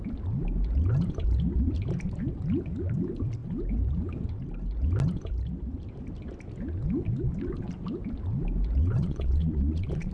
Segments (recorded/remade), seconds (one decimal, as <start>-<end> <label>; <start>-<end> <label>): 0.0-8.8 recorded; 8.8-10.1 remade